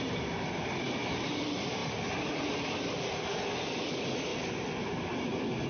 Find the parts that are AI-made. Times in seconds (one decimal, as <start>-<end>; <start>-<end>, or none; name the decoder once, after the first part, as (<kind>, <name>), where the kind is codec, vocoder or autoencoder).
4.3-5.7 (vocoder, BigVGAN v2)